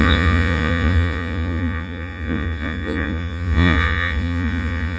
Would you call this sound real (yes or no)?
no